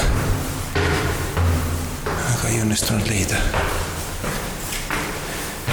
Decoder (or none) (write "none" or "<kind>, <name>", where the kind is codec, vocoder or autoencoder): none